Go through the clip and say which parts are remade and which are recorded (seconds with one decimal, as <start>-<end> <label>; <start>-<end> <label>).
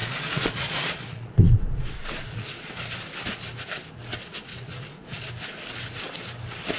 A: 0.0-2.7 remade; 2.7-4.5 recorded; 4.5-5.3 remade; 5.3-6.8 recorded